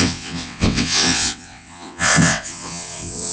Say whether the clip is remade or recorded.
remade